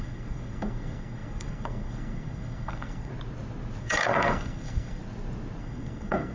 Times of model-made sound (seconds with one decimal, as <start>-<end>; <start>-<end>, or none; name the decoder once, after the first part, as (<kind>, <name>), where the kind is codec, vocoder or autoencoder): 0.0-3.1 (codec, SNAC); 3.8-5.0; 5.6-6.3

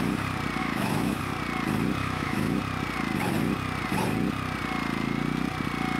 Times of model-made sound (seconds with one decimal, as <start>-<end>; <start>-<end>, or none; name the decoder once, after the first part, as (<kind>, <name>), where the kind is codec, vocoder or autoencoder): 0.6-1.2 (autoencoder, DAC-VAE); 2.0-2.6